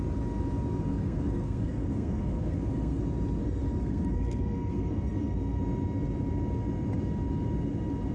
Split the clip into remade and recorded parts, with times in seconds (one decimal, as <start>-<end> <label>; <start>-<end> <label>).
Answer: 0.0-0.9 recorded; 0.9-3.0 remade; 3.0-3.4 recorded; 3.4-5.6 remade; 5.6-8.1 recorded